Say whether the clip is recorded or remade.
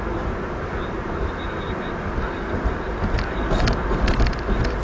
recorded